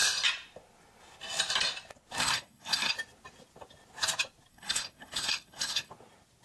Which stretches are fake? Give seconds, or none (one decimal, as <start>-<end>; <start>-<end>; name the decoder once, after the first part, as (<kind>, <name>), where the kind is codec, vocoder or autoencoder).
2.2-2.9 (codec, SNAC); 4.5-5.9